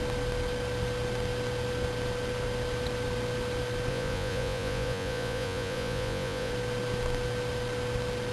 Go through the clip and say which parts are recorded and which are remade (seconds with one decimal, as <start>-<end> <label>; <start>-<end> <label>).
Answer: 0.0-3.9 recorded; 3.9-6.5 remade; 6.5-8.3 recorded